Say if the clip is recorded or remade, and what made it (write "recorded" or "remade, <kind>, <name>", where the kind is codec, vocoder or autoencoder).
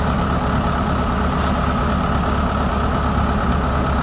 recorded